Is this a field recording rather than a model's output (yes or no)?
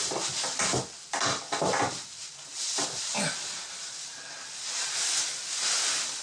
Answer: yes